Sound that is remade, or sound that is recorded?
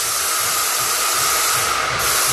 recorded